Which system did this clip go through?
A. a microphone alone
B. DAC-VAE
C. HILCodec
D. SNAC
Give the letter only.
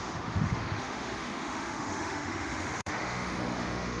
B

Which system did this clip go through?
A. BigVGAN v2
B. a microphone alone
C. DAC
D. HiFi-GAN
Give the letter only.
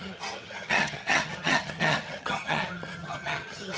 D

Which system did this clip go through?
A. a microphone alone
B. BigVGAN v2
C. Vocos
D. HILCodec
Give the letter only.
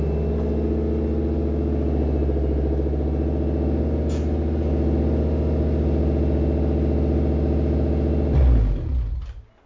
A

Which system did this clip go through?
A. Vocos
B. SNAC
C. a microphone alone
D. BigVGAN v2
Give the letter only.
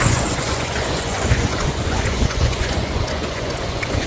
A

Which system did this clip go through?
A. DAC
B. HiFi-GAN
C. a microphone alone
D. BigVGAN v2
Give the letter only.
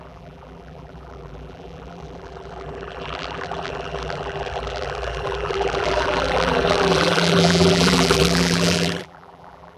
D